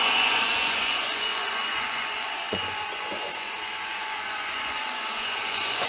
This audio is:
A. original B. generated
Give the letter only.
B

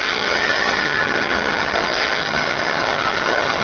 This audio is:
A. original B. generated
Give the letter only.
B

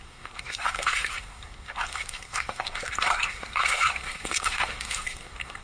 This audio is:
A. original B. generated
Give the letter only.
B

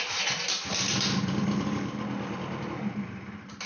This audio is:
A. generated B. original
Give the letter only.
B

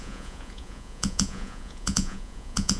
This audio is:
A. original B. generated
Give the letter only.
B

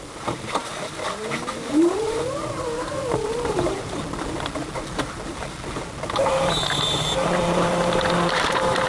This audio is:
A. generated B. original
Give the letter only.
A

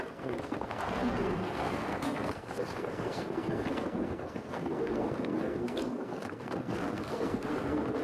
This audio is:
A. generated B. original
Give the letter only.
A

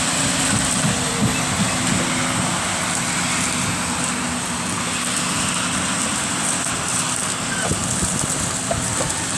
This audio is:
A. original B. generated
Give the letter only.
A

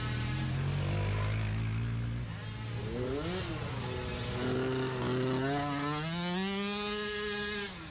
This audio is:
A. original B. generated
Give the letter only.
A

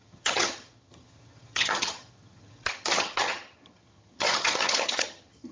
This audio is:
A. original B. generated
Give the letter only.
B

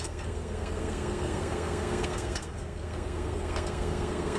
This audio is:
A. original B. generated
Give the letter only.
B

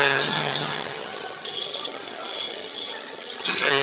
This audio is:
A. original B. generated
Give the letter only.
B